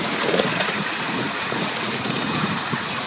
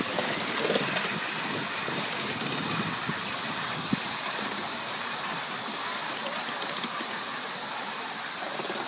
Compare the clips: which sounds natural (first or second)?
second